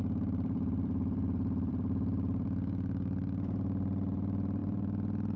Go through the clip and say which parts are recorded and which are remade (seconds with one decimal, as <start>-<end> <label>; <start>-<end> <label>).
0.0-5.4 remade